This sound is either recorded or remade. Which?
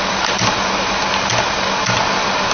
recorded